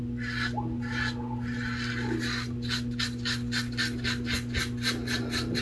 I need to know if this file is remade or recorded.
recorded